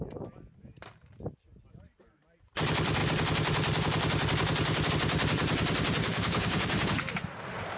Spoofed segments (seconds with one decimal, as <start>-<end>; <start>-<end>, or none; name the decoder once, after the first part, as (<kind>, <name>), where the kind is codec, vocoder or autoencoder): 6.0-6.9 (codec, DAC)